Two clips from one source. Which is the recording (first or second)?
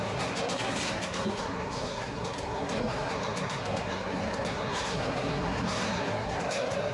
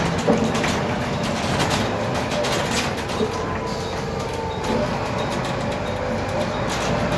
second